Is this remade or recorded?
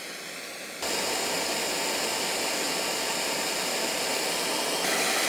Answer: recorded